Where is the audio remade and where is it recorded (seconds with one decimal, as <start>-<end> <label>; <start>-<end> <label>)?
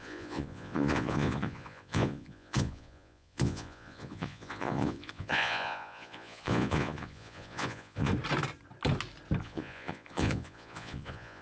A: 0.0-8.1 remade; 8.1-9.4 recorded; 9.4-11.4 remade